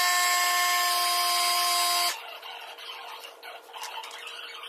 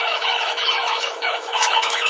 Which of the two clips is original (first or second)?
first